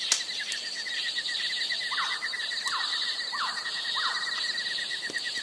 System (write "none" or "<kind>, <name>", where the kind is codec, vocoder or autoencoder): none